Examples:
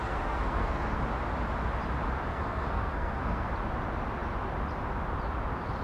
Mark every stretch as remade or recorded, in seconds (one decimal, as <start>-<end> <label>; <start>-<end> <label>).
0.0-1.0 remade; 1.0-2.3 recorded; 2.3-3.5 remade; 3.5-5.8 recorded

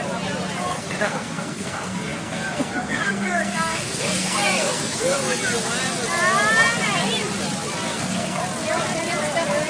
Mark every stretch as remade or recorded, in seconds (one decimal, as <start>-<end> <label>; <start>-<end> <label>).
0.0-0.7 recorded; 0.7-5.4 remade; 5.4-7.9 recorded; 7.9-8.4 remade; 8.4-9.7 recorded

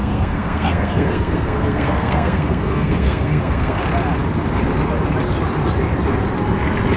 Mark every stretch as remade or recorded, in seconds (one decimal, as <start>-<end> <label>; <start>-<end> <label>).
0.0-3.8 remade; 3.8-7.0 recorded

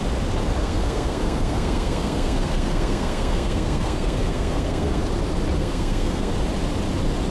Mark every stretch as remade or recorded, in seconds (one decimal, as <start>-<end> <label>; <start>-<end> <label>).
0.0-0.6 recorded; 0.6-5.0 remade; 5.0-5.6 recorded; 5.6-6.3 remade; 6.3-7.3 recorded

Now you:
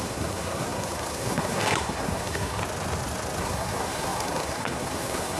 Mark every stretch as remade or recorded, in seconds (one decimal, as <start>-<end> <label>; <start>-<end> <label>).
0.0-2.6 remade; 2.6-3.4 recorded; 3.4-5.4 remade

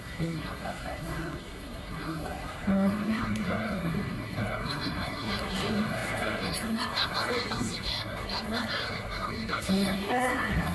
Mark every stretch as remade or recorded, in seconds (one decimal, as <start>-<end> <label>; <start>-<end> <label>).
0.0-10.7 remade